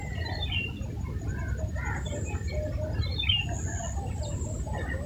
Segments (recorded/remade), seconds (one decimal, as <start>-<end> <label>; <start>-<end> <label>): 0.0-0.8 remade; 0.8-3.6 recorded; 3.6-5.1 remade